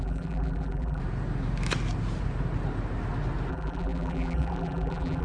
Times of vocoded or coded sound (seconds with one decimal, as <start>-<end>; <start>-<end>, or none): 0.0-1.0; 3.5-5.2